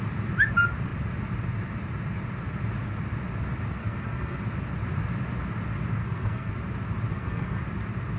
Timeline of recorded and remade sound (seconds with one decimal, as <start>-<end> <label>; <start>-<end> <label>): 0.0-3.8 recorded; 3.8-4.4 remade; 4.4-6.0 recorded; 6.0-6.5 remade; 6.5-7.1 recorded; 7.1-7.6 remade; 7.6-8.2 recorded